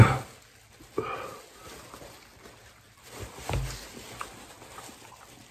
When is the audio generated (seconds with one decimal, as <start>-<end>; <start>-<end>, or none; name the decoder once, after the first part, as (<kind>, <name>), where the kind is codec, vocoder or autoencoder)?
none